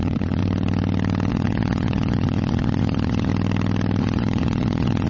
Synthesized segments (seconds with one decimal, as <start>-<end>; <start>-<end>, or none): 0.0-0.4; 1.3-3.3; 4.0-5.1